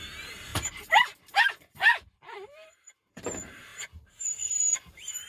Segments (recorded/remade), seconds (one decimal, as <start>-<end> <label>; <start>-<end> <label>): 0.0-5.3 remade

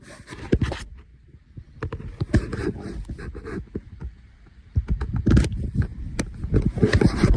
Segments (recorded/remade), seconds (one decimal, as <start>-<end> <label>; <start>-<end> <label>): 0.0-7.4 recorded

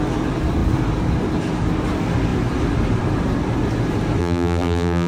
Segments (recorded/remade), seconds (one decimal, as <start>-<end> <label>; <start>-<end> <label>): 0.0-4.2 recorded; 4.2-5.1 remade

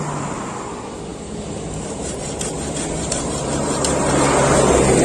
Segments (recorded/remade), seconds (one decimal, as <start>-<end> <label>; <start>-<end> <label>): 0.0-1.1 recorded; 1.1-4.1 remade; 4.1-5.0 recorded

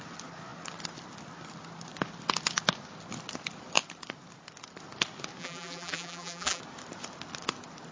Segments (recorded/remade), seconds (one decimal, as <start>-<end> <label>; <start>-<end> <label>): 0.0-5.4 recorded; 5.4-6.6 remade; 6.6-7.9 recorded